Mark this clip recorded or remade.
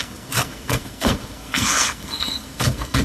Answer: remade